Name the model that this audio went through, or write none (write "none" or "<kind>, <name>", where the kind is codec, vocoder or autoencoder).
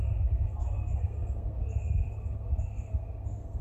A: codec, SNAC